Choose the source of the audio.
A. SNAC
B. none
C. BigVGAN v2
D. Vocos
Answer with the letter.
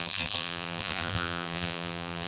C